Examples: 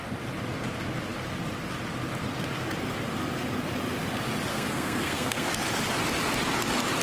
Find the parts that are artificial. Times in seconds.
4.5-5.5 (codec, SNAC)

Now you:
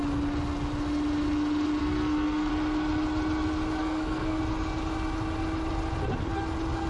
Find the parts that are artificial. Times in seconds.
1.8-2.5 (codec, SNAC); 3.8-4.4

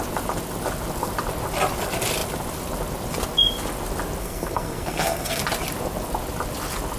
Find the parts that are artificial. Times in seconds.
4.2-5.4 (codec, SNAC)